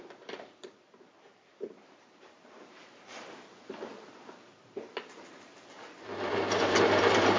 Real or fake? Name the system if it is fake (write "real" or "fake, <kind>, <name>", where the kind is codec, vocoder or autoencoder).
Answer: fake, vocoder, BigVGAN v2